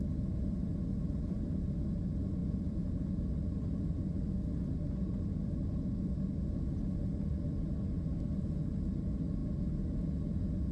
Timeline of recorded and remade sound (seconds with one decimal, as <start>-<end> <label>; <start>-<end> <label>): 0.0-2.4 recorded; 2.4-3.2 remade; 3.2-10.7 recorded